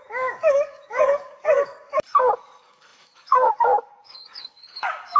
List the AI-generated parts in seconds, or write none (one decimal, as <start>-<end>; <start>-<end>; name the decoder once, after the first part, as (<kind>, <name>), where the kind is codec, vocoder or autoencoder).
0.0-5.2 (codec, DAC)